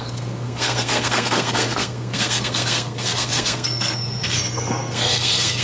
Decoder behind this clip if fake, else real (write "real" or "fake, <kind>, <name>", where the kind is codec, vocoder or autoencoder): fake, codec, SNAC